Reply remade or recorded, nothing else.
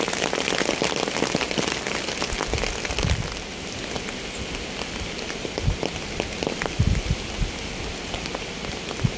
recorded